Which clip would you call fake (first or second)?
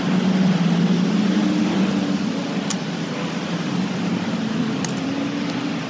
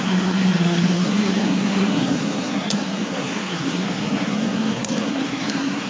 second